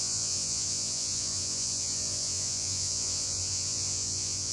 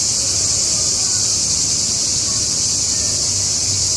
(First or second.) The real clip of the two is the second